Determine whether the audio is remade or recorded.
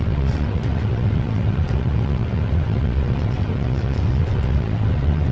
remade